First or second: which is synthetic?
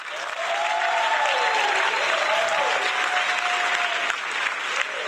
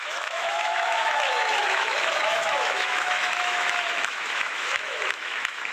second